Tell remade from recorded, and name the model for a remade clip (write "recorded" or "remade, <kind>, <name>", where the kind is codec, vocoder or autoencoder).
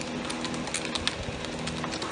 recorded